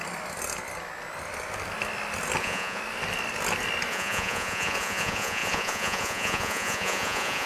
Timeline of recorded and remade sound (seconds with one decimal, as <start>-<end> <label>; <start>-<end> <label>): 0.0-2.4 recorded; 2.4-2.8 remade; 2.8-3.9 recorded; 3.9-7.5 remade